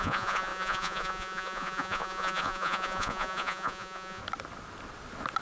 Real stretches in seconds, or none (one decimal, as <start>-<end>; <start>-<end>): 4.2-5.4